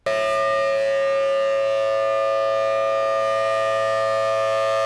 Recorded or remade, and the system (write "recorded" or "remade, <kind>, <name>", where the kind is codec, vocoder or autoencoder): recorded